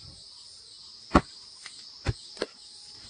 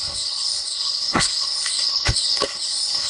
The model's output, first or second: second